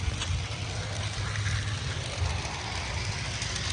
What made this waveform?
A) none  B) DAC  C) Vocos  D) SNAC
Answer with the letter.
A